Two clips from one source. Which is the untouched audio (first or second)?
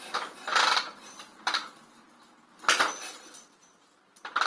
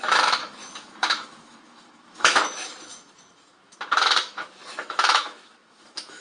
first